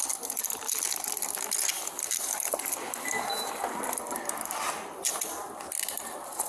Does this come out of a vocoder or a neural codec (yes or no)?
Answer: no